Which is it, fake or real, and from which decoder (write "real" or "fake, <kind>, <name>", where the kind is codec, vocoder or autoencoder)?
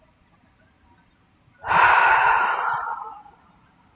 real